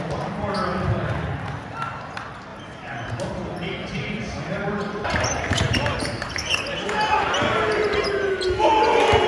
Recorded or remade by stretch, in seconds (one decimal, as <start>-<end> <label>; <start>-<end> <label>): 0.0-2.5 recorded; 2.5-3.1 remade; 3.1-3.8 recorded; 3.8-8.3 remade; 8.3-9.3 recorded

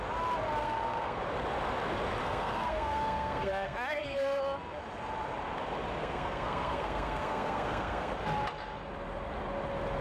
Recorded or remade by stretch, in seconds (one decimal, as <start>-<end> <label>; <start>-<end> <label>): 0.0-0.6 recorded; 0.6-1.2 remade; 1.2-2.2 recorded; 2.2-4.4 remade; 4.4-6.0 recorded; 6.0-8.1 remade; 8.1-10.0 recorded

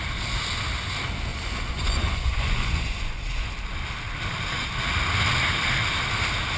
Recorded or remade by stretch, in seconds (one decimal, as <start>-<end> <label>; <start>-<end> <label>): 0.0-1.3 recorded; 1.3-3.5 remade; 3.5-6.6 recorded

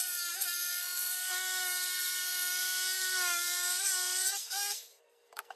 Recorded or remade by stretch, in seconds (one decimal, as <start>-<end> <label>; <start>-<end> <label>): 0.0-5.6 remade